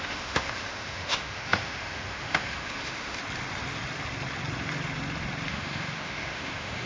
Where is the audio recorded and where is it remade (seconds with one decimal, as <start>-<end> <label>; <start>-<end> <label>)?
0.0-3.2 remade; 3.2-5.5 recorded; 5.5-6.9 remade